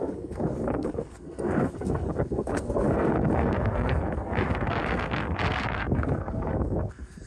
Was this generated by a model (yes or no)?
yes